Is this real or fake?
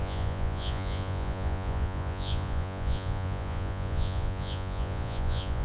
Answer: fake